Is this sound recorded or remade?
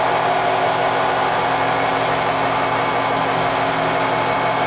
recorded